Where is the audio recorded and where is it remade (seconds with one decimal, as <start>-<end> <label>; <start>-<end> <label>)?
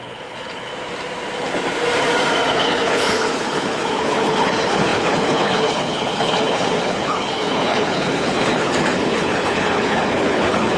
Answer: 0.0-0.7 remade; 0.7-2.5 recorded; 2.5-10.8 remade